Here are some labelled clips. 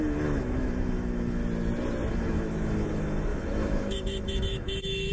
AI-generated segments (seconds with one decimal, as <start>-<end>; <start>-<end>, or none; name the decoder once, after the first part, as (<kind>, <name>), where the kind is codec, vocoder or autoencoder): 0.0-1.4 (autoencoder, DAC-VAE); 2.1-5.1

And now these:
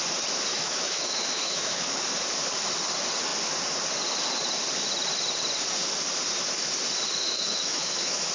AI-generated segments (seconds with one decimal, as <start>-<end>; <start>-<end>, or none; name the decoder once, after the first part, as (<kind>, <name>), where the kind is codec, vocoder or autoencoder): 0.5-2.0 (autoencoder, DAC-VAE); 7.2-8.3

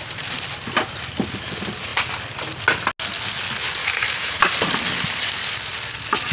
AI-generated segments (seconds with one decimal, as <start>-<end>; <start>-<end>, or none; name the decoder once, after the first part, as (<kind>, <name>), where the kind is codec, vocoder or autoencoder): 3.8-4.4 (autoencoder, DAC-VAE)

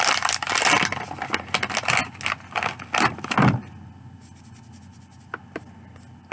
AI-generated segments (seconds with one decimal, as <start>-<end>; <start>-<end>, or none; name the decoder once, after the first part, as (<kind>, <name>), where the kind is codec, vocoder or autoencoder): none

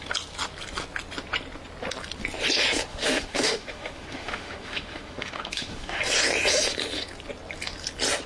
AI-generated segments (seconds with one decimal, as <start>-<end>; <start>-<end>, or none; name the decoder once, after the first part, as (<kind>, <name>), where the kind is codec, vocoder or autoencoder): 2.9-6.0 (autoencoder, DAC-VAE)

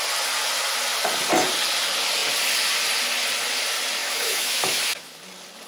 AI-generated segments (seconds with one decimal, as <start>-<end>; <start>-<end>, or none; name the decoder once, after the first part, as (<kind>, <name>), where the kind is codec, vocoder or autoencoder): 4.0-5.2 (autoencoder, DAC-VAE)